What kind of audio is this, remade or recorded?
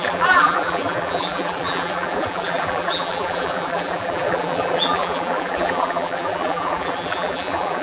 remade